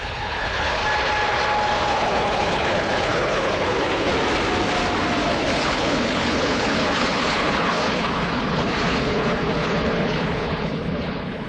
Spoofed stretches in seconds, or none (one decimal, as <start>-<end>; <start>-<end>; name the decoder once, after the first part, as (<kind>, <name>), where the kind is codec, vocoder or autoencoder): 0.0-0.8 (codec, HILCodec); 1.9-4.1; 5.3-11.5